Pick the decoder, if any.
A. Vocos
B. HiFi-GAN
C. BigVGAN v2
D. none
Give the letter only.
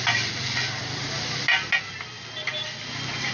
D